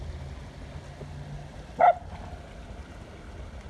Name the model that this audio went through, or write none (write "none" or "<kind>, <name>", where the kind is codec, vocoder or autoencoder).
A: none